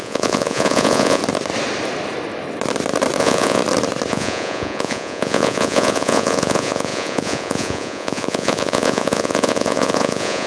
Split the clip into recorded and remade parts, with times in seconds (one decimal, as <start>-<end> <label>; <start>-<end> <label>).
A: 0.0-1.2 remade; 1.2-3.2 recorded; 3.2-3.6 remade; 3.6-4.1 recorded; 4.1-10.5 remade